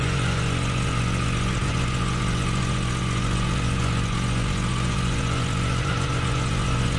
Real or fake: fake